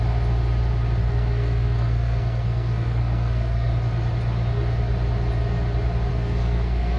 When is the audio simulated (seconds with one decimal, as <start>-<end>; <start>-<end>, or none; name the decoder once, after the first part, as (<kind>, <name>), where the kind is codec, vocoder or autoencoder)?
1.0-3.7 (codec, SNAC); 6.1-7.0